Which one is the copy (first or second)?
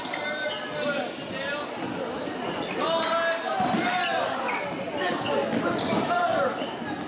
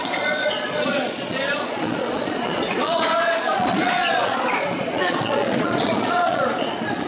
second